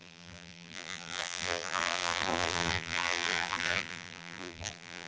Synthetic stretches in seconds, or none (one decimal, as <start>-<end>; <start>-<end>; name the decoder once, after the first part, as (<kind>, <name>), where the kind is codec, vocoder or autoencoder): 0.0-5.1 (vocoder, BigVGAN v2)